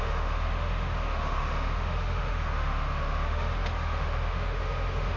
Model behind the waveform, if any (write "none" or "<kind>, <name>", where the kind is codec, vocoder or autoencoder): autoencoder, DAC-VAE